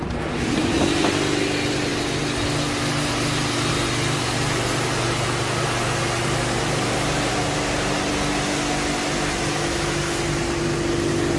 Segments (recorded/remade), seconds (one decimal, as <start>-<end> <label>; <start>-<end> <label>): 0.0-11.4 recorded